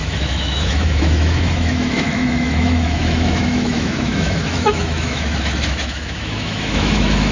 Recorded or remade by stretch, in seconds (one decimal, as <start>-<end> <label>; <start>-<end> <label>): 0.0-7.3 remade